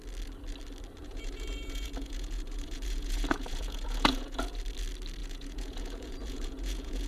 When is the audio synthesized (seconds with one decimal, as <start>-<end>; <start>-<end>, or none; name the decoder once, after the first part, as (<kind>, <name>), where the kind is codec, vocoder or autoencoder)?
1.0-4.6 (vocoder, Vocos); 5.2-7.1